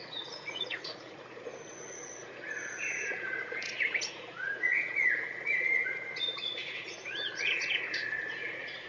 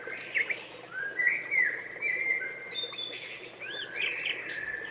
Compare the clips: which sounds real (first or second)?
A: second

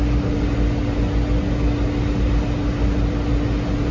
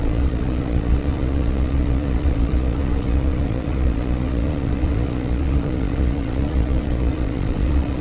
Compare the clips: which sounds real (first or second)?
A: first